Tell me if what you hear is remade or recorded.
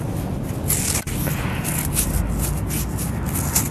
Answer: recorded